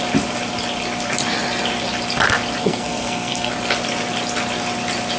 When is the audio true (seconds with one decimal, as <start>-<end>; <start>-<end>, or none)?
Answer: 0.0-2.6; 3.5-5.2